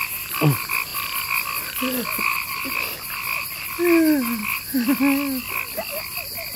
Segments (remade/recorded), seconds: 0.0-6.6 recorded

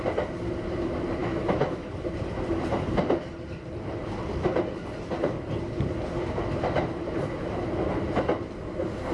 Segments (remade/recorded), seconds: 0.0-1.2 recorded; 1.2-1.9 remade; 1.9-9.1 recorded

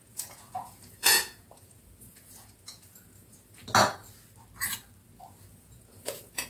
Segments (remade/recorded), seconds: 0.0-3.6 remade; 3.6-5.5 recorded; 5.5-6.5 remade

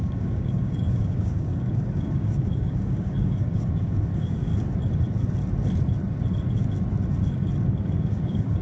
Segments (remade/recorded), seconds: 0.0-4.5 remade; 4.5-7.6 recorded; 7.6-8.6 remade